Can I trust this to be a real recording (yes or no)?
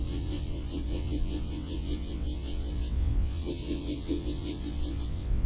no